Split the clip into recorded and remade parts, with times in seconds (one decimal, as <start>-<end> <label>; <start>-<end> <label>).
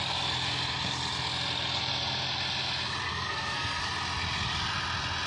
0.0-3.1 recorded; 3.1-3.8 remade; 3.8-5.3 recorded